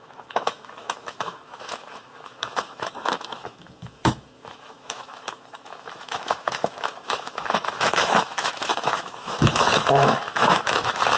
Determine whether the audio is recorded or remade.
remade